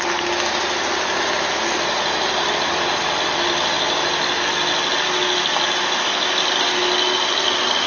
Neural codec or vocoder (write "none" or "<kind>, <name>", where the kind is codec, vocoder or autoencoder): none